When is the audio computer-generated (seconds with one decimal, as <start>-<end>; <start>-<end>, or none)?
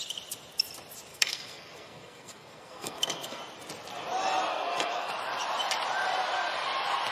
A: 1.1-3.4; 4.5-5.1